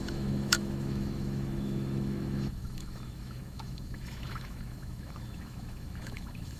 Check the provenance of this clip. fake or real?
fake